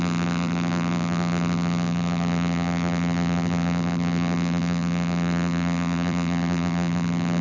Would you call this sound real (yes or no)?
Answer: no